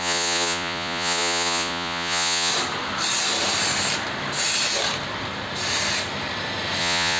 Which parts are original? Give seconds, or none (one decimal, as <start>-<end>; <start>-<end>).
2.5-6.8